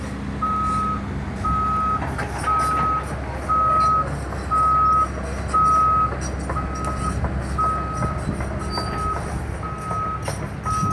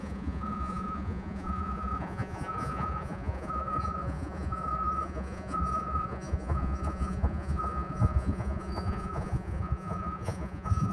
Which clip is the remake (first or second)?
second